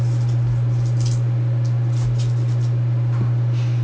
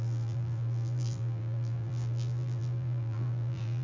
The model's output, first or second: second